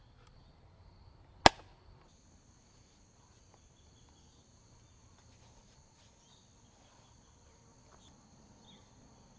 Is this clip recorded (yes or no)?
yes